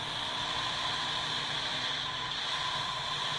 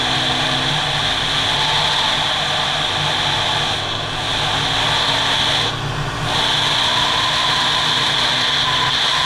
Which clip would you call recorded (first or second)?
second